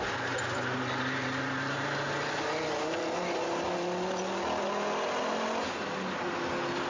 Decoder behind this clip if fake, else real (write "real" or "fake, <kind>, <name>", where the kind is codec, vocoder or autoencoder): real